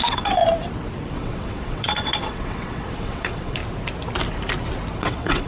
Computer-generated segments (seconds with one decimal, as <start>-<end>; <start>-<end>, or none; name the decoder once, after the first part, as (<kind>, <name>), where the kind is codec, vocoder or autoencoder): 0.0-0.4 (vocoder, WaveNeXt); 1.1-3.6; 5.0-5.5